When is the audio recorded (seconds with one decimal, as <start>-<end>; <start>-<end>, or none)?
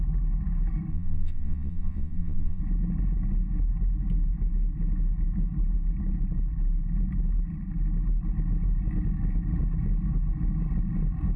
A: 0.0-0.9; 2.6-11.4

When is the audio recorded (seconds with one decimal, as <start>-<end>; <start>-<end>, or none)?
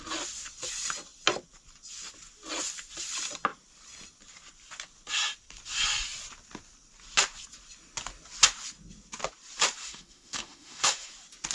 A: 0.0-9.8; 11.1-11.5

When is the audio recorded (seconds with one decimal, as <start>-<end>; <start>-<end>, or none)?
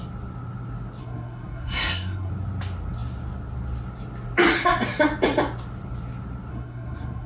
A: 0.0-1.0; 2.3-6.5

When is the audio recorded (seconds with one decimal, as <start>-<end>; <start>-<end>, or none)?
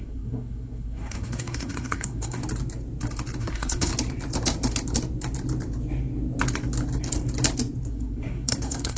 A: 2.4-3.4; 3.9-7.9